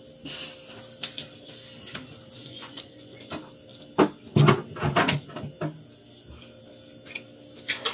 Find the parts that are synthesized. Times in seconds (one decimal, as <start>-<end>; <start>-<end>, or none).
2.4-3.3

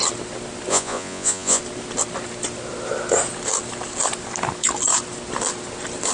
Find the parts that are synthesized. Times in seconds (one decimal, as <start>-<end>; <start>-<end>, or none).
0.7-1.6